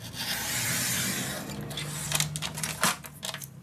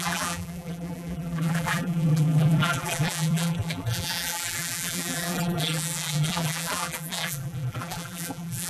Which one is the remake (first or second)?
second